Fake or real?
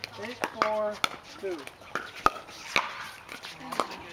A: real